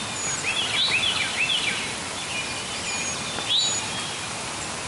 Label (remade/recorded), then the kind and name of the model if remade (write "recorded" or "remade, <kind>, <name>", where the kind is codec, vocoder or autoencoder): recorded